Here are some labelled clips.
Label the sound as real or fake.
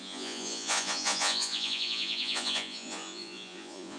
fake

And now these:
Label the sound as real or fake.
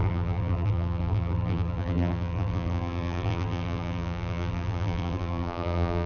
fake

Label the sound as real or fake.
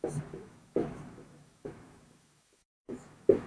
fake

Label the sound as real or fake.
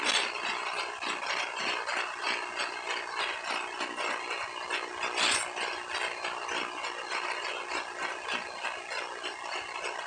real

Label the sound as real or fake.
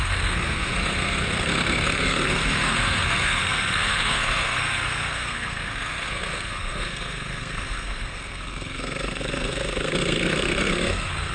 fake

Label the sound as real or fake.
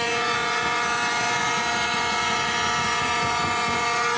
fake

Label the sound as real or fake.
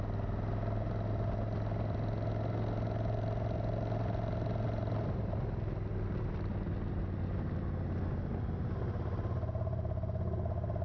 real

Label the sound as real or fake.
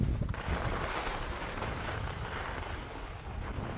real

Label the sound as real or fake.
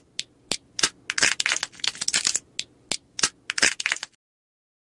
real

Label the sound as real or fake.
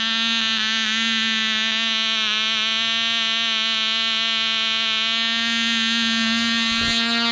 real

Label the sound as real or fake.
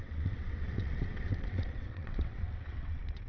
fake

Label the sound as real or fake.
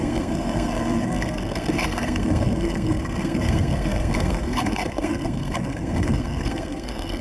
fake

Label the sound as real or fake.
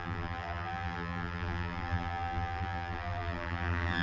fake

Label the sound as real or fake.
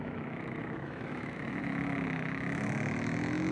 fake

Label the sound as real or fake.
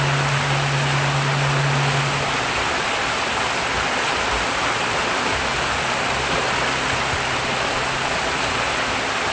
real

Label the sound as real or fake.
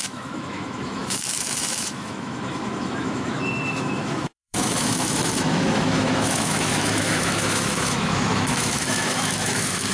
fake